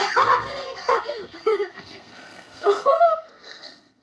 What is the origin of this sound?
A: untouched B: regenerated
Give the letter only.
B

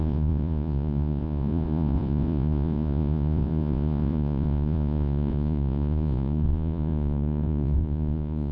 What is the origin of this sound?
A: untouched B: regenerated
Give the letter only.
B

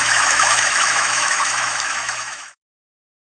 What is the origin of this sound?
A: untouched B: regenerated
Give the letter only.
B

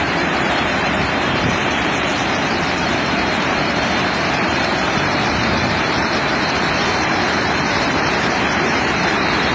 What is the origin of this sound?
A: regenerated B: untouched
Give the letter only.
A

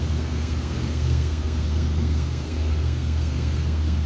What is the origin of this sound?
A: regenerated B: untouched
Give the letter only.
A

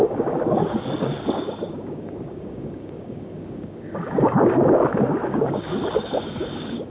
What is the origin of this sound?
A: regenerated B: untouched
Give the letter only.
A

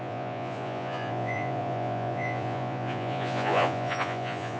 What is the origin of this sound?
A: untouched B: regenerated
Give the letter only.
B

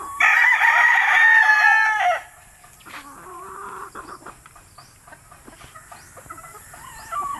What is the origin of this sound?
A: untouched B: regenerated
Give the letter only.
A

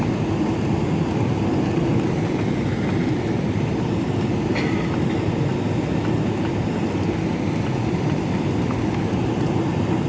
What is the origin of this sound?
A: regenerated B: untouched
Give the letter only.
B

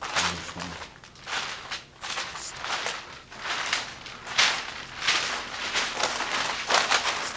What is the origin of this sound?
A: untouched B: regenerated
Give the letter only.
A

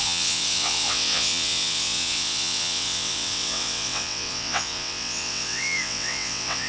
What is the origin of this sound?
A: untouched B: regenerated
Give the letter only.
B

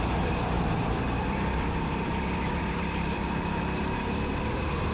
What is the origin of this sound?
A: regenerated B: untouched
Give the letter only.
A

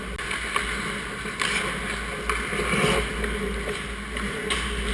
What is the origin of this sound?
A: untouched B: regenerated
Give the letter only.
A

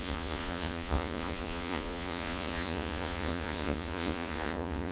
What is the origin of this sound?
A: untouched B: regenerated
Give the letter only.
B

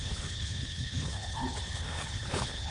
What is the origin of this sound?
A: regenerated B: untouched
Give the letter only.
A